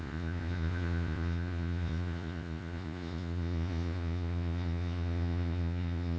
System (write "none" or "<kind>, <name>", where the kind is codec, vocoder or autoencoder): vocoder, Vocos